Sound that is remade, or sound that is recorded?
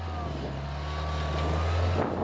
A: recorded